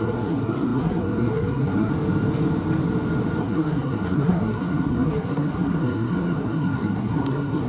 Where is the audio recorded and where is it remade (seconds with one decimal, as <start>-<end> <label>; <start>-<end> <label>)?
0.0-1.9 remade; 1.9-3.4 recorded; 3.4-7.7 remade